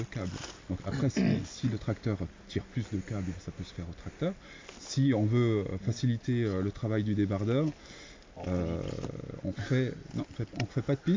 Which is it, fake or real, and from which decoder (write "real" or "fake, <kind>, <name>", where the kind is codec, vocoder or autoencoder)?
real